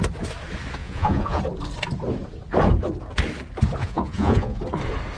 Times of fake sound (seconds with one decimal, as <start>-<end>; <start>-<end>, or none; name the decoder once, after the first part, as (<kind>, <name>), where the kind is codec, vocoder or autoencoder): 0.8-1.4 (vocoder, Vocos); 3.8-4.6